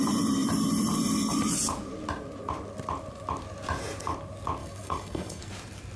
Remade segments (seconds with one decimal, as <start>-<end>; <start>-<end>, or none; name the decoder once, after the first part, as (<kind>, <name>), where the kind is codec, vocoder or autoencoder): 4.6-5.5 (codec, SNAC)